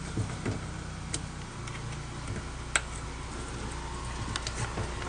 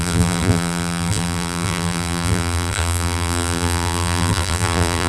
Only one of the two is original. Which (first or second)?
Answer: first